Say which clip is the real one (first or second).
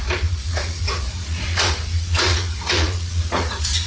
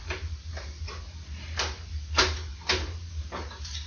second